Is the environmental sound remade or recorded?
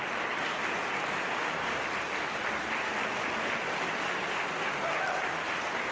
recorded